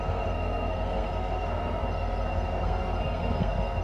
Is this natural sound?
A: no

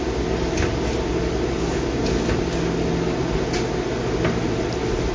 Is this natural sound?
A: yes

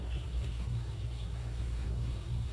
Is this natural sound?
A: no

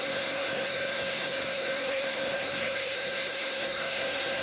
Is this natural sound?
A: no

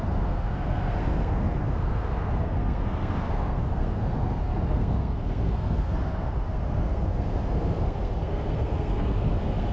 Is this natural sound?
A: no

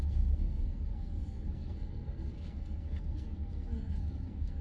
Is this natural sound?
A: no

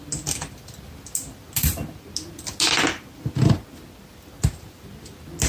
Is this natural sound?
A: yes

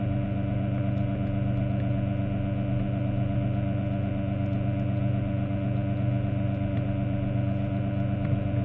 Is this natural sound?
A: yes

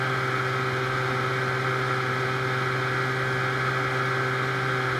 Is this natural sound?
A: yes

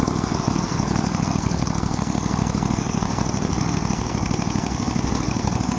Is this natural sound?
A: no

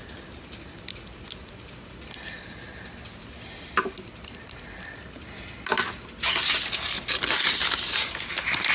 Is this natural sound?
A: yes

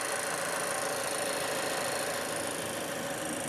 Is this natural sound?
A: yes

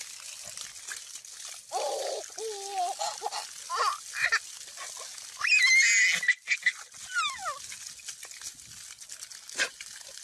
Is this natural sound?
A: yes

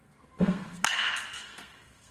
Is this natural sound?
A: no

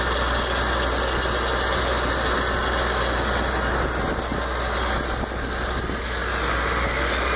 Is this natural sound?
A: yes